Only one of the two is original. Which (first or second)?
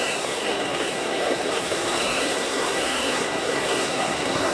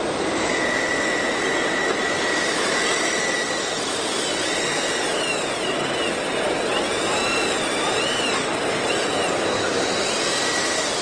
second